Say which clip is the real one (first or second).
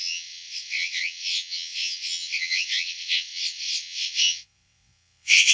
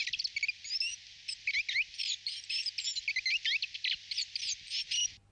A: second